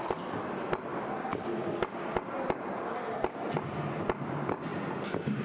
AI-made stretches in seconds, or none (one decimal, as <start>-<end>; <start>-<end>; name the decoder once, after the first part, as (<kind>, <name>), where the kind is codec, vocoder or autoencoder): none